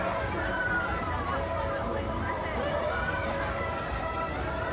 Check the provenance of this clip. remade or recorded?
remade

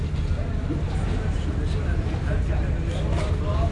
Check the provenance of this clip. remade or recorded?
recorded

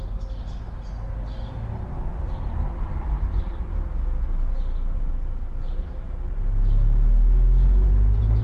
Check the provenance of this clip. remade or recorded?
recorded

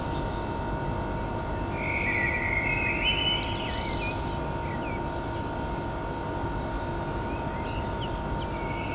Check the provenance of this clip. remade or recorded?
recorded